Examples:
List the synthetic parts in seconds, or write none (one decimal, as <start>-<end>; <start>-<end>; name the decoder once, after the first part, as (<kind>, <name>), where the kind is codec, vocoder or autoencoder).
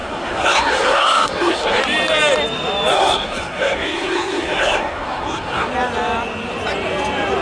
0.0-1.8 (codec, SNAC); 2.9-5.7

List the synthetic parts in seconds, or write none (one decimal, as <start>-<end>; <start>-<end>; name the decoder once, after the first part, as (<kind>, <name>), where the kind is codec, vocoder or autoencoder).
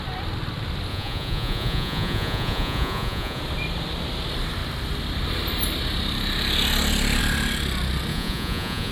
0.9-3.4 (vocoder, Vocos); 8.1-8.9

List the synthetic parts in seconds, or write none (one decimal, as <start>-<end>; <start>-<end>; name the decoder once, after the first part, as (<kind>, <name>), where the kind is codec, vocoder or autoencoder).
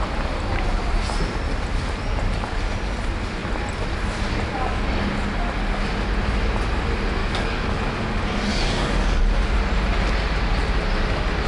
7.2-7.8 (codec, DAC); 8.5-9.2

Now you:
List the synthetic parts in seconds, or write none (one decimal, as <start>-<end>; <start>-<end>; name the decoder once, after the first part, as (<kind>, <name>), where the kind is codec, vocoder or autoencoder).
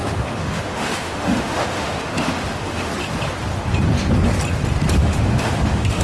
0.0-2.9 (autoencoder, DAC-VAE); 5.0-6.0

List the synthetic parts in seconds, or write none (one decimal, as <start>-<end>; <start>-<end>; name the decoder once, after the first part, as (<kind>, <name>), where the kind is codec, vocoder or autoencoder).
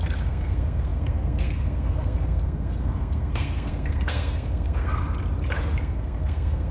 0.0-5.0 (codec, SNAC); 5.8-6.7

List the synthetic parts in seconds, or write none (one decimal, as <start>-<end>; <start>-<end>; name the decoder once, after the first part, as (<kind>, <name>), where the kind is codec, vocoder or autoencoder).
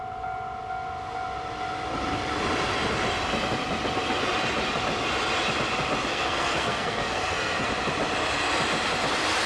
6.1-7.7 (codec, SNAC)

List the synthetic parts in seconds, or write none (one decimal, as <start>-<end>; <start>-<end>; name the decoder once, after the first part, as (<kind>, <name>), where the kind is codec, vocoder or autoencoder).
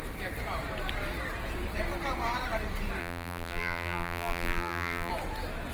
3.0-5.1 (vocoder, BigVGAN v2)